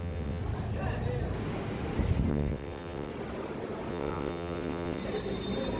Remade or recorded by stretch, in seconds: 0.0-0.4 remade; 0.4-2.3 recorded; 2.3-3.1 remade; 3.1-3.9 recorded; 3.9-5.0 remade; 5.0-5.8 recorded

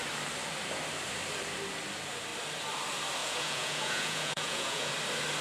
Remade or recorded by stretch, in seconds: 0.0-3.2 recorded; 3.2-4.9 remade; 4.9-5.4 recorded